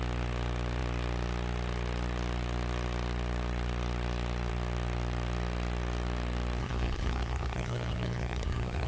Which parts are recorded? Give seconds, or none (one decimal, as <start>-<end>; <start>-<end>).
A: 0.0-6.6